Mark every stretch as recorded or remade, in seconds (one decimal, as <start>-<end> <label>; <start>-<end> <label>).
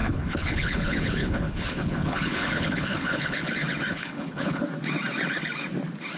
0.0-3.5 remade; 3.5-3.9 recorded; 3.9-4.6 remade; 4.6-6.2 recorded